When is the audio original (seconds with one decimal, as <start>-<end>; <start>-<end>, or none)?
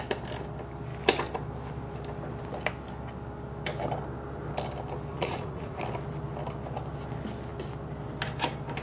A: 0.0-5.1; 5.8-8.8